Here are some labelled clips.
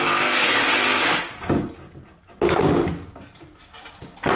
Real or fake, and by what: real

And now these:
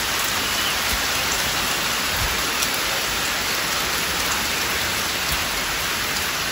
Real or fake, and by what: real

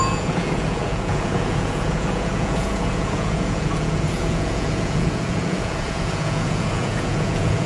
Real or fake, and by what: fake, vocoder, Vocos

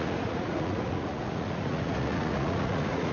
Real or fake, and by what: fake, vocoder, Vocos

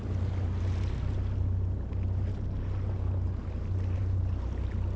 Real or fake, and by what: real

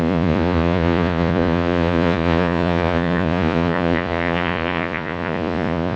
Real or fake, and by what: fake, vocoder, Vocos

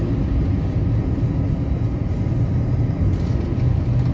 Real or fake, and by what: real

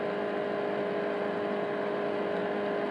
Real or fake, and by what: real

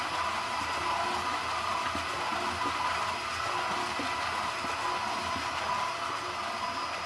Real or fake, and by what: real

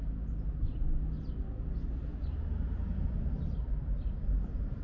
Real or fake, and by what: real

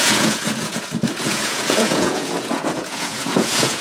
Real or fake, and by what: fake, vocoder, Vocos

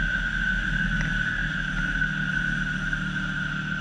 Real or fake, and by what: real